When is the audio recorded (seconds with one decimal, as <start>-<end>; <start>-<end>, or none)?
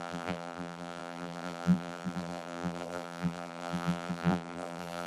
none